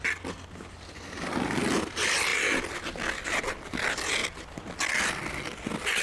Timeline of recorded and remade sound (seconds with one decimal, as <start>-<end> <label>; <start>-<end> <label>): 0.0-6.0 recorded